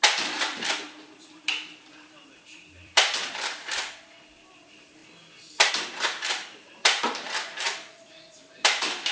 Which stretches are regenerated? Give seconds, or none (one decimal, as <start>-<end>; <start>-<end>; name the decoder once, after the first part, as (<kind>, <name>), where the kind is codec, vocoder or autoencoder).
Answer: 0.0-5.0 (vocoder, BigVGAN v2); 5.7-9.1